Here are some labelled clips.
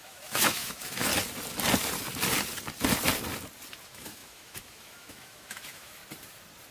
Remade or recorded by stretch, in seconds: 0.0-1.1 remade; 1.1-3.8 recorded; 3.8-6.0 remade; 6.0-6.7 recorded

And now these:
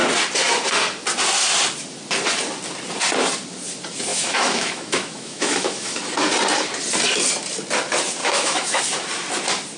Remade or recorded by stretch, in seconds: 0.0-4.1 recorded; 4.1-5.9 remade; 5.9-8.2 recorded; 8.2-8.8 remade; 8.8-9.8 recorded

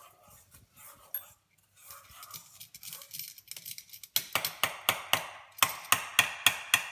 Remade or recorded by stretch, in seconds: 0.0-6.9 recorded

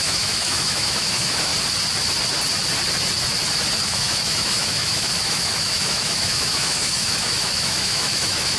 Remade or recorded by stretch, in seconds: 0.0-1.5 remade; 1.5-3.8 recorded; 3.8-8.6 remade

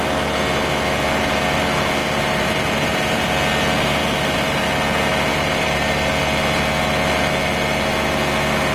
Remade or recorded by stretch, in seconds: 0.0-2.0 recorded; 2.0-3.3 remade; 3.3-4.0 recorded; 4.0-4.7 remade; 4.7-5.3 recorded; 5.3-6.1 remade; 6.1-8.7 recorded

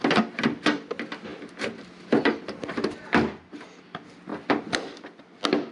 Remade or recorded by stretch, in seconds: 0.0-5.7 recorded

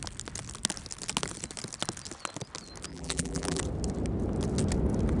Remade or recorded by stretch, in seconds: 0.0-2.9 recorded; 2.9-3.6 remade; 3.6-5.2 recorded